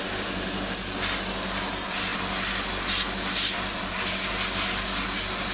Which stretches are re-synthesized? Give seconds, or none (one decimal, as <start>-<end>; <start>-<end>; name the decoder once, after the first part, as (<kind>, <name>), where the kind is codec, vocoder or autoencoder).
none